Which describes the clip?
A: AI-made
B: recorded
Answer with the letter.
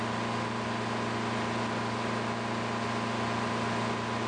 B